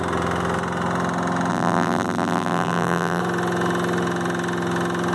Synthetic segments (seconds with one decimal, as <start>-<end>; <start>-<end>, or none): 1.5-3.2